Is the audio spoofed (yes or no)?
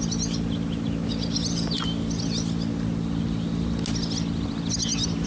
no